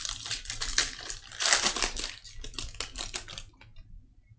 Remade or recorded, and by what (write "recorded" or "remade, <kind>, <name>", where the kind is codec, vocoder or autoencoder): recorded